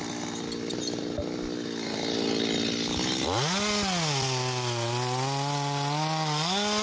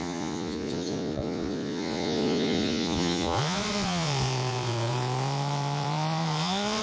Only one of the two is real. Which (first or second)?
first